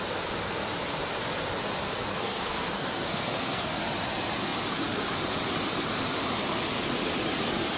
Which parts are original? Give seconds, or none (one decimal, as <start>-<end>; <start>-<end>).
0.0-2.1; 3.7-7.8